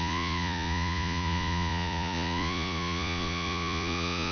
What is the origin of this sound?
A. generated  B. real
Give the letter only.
A